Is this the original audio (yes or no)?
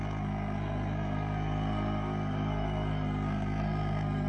no